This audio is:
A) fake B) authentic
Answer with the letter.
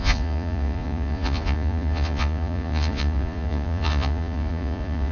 A